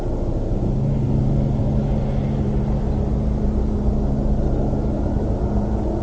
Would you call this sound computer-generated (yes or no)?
no